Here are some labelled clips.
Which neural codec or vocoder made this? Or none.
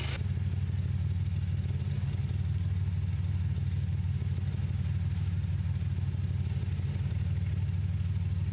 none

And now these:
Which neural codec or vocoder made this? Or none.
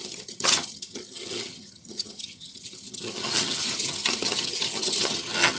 vocoder, HiFi-GAN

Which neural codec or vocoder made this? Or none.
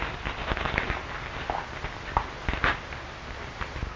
none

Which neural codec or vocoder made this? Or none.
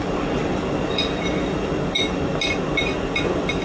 none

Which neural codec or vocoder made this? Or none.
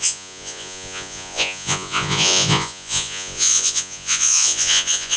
vocoder, Vocos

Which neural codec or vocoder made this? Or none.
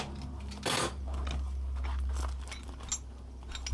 none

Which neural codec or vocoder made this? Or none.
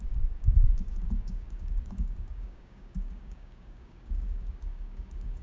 codec, DAC